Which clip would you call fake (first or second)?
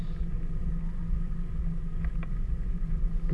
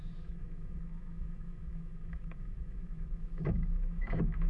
second